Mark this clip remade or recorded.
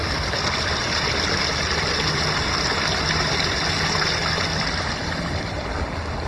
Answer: recorded